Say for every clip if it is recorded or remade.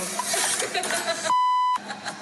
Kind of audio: recorded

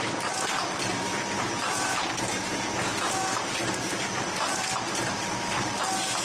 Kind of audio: recorded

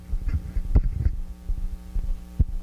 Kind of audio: recorded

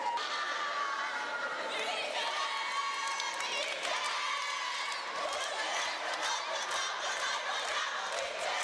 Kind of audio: recorded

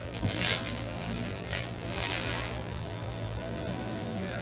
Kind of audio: remade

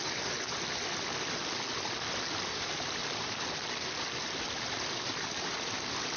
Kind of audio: recorded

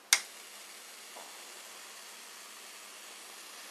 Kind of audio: recorded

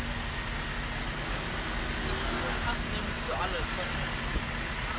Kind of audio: recorded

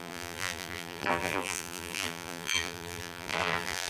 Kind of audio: remade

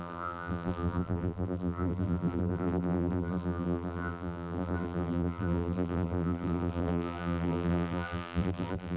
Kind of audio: remade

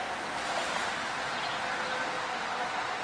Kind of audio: recorded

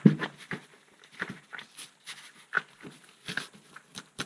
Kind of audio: recorded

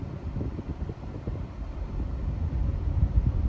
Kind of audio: remade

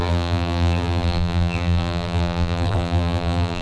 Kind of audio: remade